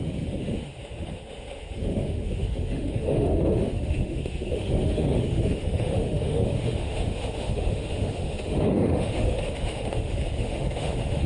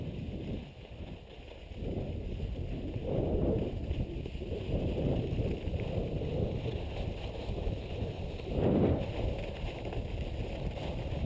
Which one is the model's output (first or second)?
first